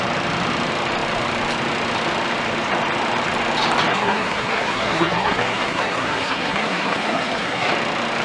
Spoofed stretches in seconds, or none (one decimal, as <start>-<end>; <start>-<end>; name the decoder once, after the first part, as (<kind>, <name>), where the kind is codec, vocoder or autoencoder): 3.9-7.7 (codec, SNAC)